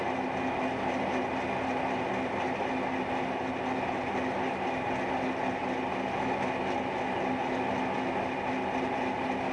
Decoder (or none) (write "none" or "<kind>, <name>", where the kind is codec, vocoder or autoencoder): none